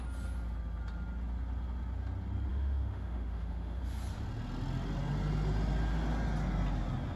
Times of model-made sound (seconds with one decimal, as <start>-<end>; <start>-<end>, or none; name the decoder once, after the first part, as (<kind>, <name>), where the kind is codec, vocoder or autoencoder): 2.5-3.8 (autoencoder, DAC-VAE)

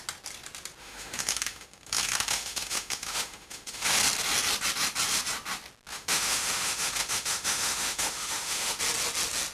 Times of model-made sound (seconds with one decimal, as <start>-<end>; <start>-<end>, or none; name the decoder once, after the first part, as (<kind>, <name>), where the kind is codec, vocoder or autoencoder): 0.8-4.0 (autoencoder, DAC-VAE); 5.9-8.8

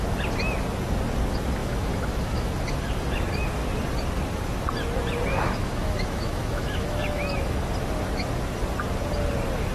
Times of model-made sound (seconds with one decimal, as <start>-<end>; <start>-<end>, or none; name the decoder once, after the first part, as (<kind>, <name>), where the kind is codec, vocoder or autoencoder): 1.6-2.5 (autoencoder, DAC-VAE); 5.3-7.5

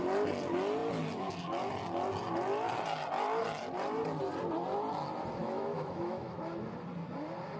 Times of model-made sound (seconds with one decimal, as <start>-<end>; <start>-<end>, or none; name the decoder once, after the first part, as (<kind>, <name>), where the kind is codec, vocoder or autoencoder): 5.4-6.4 (autoencoder, DAC-VAE)

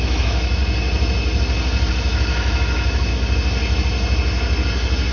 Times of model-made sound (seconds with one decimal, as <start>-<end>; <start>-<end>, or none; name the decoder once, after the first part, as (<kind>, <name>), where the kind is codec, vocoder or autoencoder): 0.0-0.6 (autoencoder, DAC-VAE); 1.9-3.1

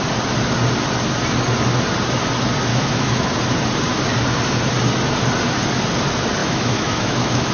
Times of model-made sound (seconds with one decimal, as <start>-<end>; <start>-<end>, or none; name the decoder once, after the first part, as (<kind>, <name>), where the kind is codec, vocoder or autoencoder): 2.7-3.3 (autoencoder, DAC-VAE); 6.4-7.5